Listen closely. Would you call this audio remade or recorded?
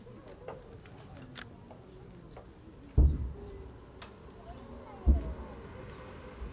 recorded